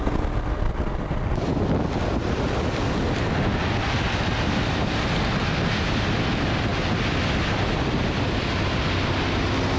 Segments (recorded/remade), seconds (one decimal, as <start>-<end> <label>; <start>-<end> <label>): 0.0-9.8 recorded